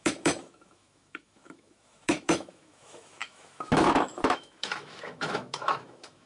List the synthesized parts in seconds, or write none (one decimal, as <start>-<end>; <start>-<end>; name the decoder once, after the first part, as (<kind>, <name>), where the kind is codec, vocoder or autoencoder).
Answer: 0.0-6.3 (autoencoder, DAC-VAE)